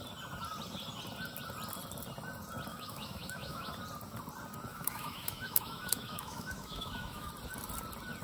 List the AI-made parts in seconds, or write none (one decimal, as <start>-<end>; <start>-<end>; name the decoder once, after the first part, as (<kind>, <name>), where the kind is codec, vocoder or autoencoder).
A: 2.7-3.7 (autoencoder, DAC-VAE); 4.7-7.3